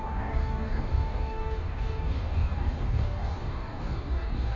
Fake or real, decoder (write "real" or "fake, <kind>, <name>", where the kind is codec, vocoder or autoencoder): fake, codec, DAC